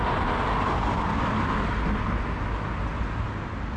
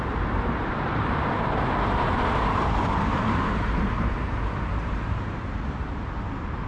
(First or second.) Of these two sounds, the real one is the first